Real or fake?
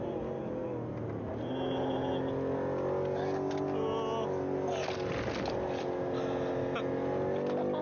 real